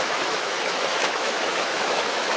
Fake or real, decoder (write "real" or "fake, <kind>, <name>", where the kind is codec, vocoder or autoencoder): fake, autoencoder, DAC-VAE